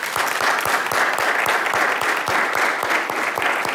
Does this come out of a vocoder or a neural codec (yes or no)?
no